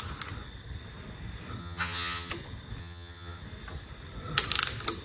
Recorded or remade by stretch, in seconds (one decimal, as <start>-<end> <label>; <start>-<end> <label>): 0.0-1.6 recorded; 1.6-2.3 remade; 2.3-2.8 recorded; 2.8-3.4 remade; 3.4-5.0 recorded